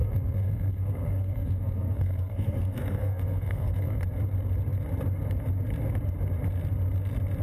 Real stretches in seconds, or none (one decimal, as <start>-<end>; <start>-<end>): 4.0-7.4